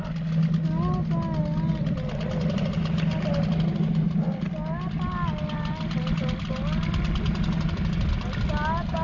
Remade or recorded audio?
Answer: recorded